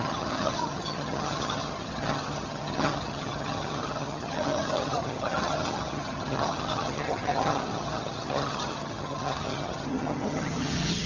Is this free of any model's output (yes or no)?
no